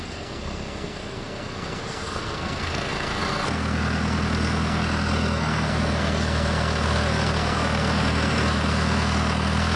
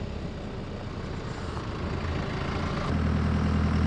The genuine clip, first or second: second